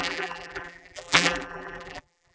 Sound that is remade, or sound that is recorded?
remade